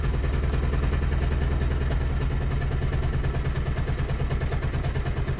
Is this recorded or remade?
recorded